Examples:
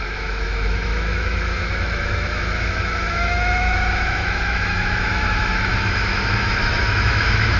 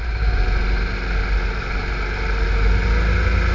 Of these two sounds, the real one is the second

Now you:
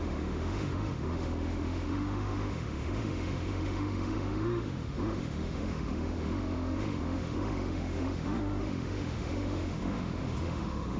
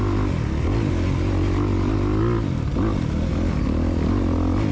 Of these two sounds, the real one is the second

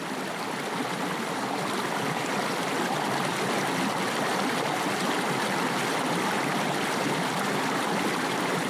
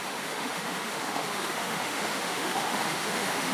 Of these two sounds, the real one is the first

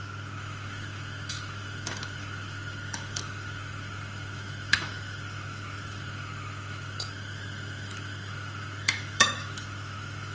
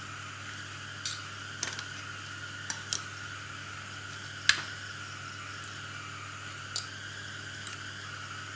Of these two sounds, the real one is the second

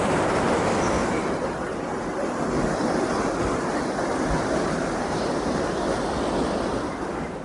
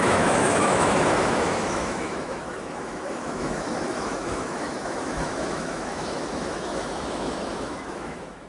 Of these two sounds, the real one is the first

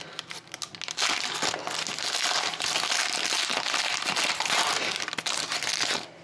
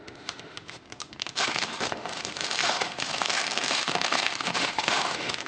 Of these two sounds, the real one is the first